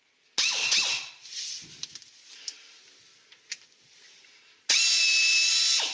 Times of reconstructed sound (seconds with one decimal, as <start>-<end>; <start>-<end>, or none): none